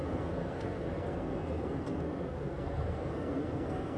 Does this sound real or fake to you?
fake